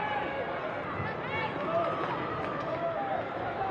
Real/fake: real